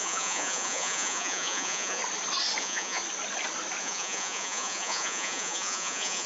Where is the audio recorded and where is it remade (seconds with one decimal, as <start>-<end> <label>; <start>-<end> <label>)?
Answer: 0.0-2.0 remade; 2.0-2.6 recorded; 2.6-3.0 remade; 3.0-3.8 recorded; 3.8-6.3 remade